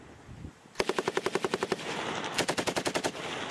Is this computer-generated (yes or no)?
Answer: no